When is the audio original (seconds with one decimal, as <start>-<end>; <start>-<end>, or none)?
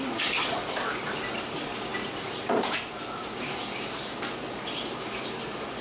0.0-5.8